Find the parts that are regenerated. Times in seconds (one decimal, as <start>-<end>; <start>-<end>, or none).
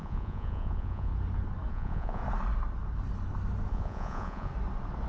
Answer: 0.0-1.1; 1.7-2.2; 3.7-4.5